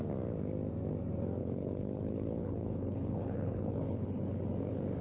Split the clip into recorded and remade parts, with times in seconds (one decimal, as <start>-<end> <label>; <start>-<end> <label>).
0.0-1.4 recorded; 1.4-4.4 remade; 4.4-5.0 recorded